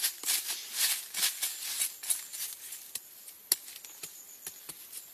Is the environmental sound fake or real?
real